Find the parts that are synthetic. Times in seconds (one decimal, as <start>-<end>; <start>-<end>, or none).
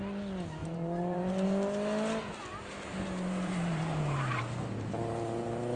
0.6-1.3; 2.5-4.4